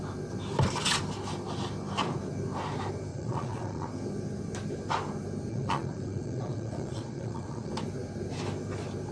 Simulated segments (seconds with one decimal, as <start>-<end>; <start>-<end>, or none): 3.1-3.9; 5.5-7.7